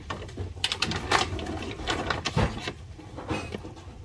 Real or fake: real